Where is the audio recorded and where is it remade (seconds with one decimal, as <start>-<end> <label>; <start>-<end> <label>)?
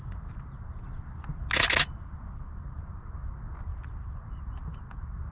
0.0-3.7 recorded; 3.7-4.5 remade; 4.5-5.3 recorded